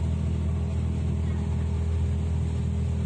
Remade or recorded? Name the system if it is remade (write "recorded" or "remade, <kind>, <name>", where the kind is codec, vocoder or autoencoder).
recorded